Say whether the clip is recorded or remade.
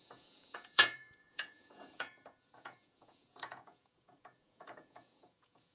remade